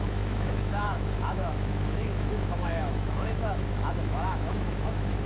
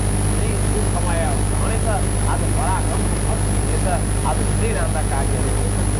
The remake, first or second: first